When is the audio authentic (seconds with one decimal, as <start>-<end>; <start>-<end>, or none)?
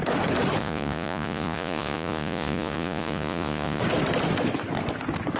0.0-0.6; 3.8-5.4